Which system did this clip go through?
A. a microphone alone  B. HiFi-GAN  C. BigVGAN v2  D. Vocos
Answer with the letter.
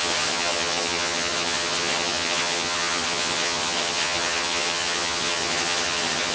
B